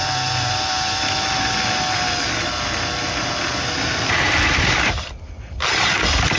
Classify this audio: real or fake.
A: real